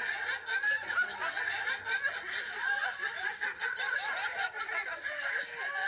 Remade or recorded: recorded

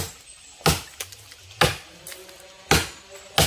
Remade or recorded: recorded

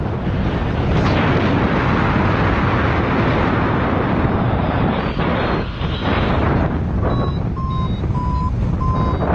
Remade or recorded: recorded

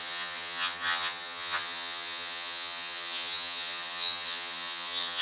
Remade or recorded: remade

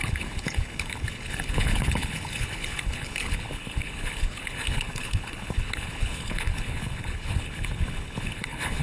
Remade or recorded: remade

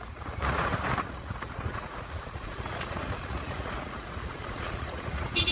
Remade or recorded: remade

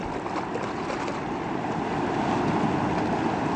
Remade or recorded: recorded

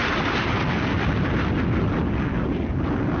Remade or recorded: recorded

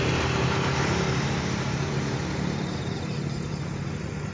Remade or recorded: remade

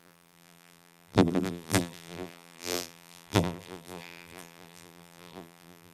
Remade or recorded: remade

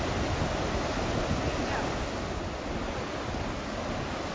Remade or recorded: recorded